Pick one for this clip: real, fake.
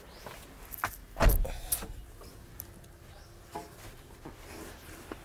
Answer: real